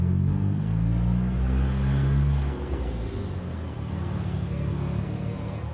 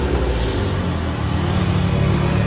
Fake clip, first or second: first